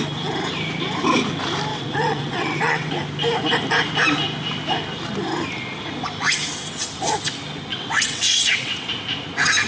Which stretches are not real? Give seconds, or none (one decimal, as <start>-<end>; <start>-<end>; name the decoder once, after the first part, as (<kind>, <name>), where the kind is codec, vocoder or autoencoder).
1.7-2.9 (vocoder, WaveNeXt); 7.7-8.9